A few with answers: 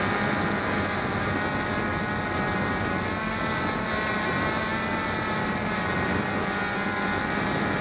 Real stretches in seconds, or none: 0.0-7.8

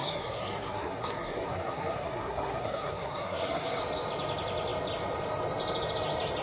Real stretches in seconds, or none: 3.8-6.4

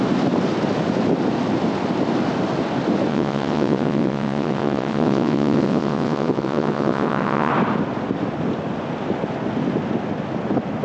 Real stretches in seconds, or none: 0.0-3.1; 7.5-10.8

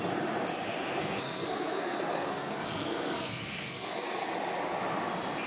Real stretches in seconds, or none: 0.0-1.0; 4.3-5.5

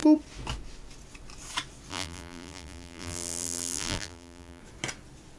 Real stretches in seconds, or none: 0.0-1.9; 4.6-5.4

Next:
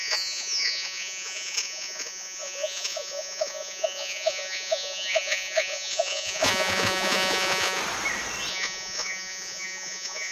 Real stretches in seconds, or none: 7.8-8.5

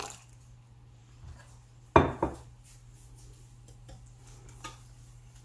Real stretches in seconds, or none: 0.0-5.4